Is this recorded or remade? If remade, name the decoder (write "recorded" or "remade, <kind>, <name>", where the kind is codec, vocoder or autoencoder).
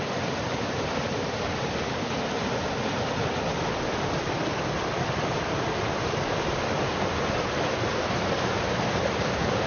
remade, vocoder, BigVGAN v2